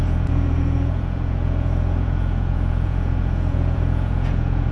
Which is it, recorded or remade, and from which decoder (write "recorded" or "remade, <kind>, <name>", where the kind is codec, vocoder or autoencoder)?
remade, vocoder, Vocos